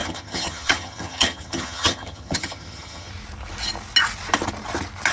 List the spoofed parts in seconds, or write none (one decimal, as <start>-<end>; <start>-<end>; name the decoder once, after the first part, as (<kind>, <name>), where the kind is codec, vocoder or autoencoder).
0.0-3.1 (vocoder, HiFi-GAN)